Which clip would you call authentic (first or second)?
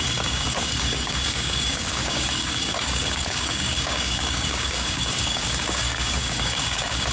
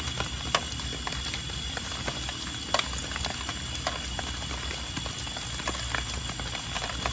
second